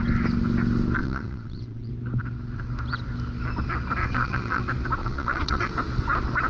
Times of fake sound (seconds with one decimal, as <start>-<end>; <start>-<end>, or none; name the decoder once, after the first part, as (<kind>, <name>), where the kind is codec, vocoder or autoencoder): 1.0-1.9 (vocoder, WaveNeXt); 4.0-4.6; 5.0-5.7